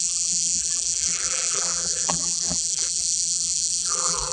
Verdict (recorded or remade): remade